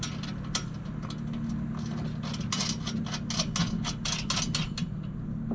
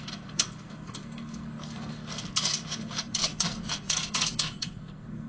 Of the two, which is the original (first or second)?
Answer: first